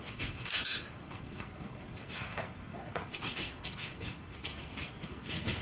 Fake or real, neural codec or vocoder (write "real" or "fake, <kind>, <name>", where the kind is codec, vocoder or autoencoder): fake, codec, SNAC